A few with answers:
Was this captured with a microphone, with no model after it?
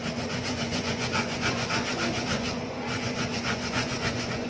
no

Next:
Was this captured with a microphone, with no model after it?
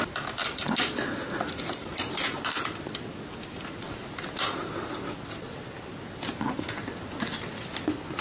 yes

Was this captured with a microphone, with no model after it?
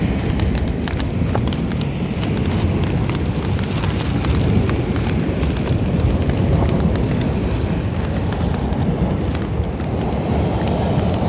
yes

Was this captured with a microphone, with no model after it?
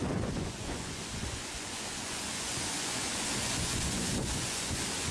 no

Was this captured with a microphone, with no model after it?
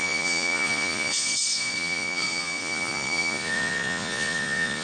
no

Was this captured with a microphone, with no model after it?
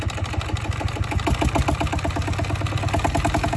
yes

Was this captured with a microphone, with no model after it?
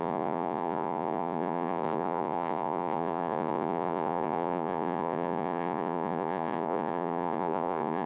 no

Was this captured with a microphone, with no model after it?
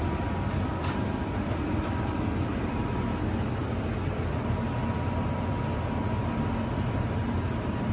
yes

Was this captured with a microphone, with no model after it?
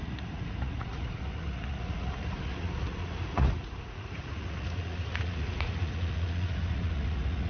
no